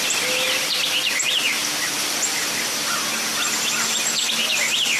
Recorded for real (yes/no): yes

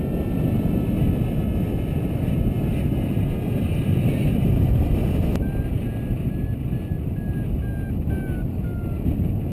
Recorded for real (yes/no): yes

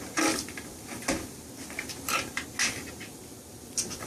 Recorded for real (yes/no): yes